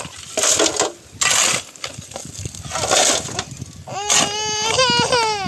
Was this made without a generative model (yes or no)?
yes